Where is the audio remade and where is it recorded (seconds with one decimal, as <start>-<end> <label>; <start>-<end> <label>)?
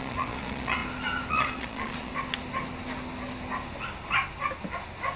0.0-0.8 remade; 0.8-1.3 recorded; 1.3-2.1 remade; 2.1-5.2 recorded